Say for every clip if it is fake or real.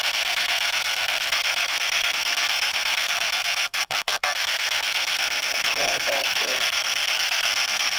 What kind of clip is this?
fake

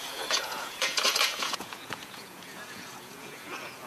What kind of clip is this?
fake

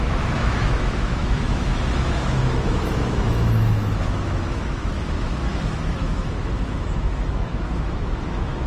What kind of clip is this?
fake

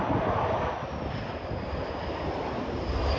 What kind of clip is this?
fake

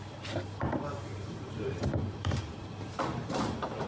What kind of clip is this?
fake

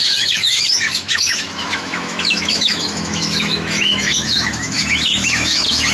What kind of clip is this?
fake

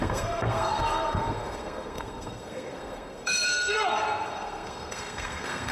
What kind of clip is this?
fake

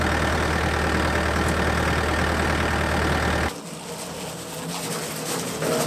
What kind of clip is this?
real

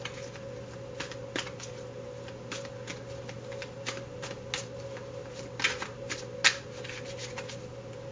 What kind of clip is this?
real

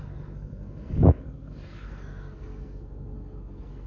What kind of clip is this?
fake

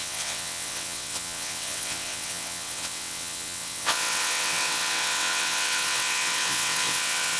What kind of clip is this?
fake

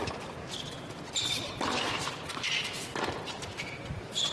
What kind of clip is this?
real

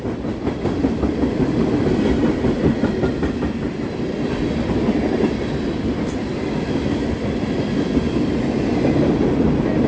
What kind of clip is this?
real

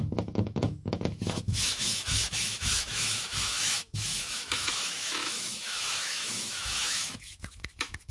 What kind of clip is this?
fake